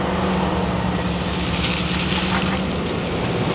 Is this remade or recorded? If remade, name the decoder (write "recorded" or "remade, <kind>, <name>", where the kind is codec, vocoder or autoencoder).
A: recorded